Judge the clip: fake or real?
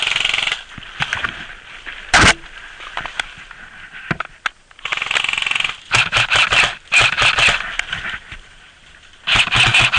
real